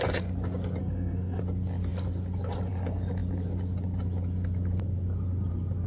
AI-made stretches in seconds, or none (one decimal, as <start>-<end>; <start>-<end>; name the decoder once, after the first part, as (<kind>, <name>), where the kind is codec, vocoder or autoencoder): 0.8-1.4 (codec, SNAC)